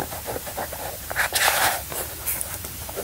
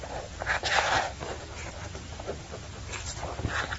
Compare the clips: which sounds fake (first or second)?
first